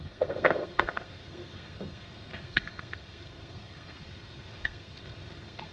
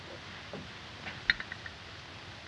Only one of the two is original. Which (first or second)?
second